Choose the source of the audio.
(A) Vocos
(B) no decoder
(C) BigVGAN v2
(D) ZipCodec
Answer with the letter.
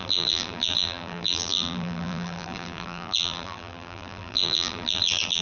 C